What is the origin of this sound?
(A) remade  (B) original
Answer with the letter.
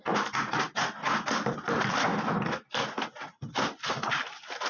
B